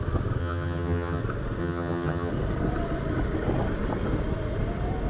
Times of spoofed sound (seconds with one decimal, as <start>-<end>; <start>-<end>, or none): 0.4-1.2; 1.6-2.3